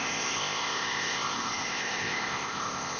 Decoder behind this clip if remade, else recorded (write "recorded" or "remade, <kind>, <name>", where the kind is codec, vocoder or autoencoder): remade, codec, ZipCodec